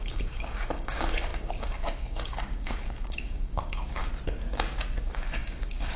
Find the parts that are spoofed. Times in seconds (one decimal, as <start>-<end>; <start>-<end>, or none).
0.0-4.0; 5.0-6.0